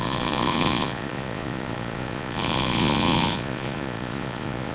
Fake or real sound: fake